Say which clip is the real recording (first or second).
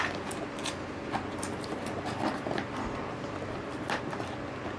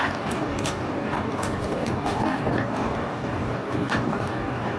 first